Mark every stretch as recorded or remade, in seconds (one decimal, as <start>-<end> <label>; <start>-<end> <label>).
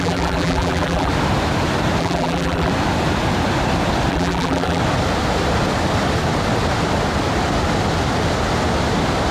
0.0-1.1 remade; 1.1-2.0 recorded; 2.0-2.7 remade; 2.7-4.1 recorded; 4.1-4.8 remade; 4.8-9.3 recorded